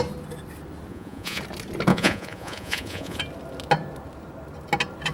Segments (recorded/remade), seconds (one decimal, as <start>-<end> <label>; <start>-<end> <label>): 0.0-0.9 recorded; 0.9-1.4 remade; 1.4-1.9 recorded; 1.9-3.2 remade; 3.2-5.1 recorded